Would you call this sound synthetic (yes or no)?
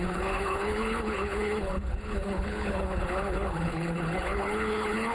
yes